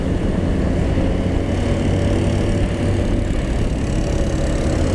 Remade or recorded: recorded